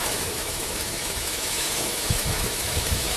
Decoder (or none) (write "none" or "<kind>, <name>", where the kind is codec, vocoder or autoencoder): autoencoder, DAC-VAE